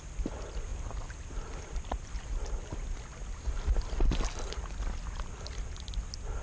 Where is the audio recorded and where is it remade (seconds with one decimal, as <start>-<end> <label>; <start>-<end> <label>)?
0.0-6.4 recorded